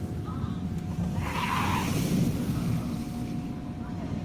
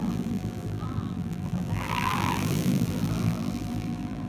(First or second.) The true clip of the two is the first